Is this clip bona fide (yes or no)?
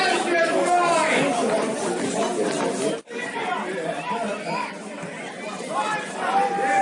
yes